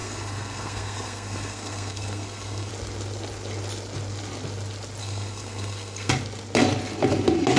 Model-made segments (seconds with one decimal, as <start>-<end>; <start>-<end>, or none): 0.0-2.7; 5.0-6.1